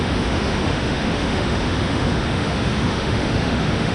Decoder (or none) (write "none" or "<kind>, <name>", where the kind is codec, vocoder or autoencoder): autoencoder, DAC-VAE